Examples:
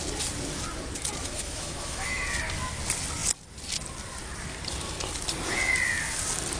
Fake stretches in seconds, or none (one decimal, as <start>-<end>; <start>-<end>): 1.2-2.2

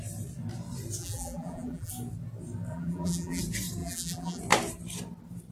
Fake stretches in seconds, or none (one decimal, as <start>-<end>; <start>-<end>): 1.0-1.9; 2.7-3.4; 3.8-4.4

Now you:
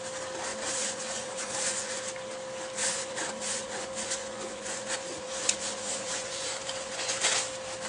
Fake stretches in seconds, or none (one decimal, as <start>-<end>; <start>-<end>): 0.5-2.0; 2.8-7.3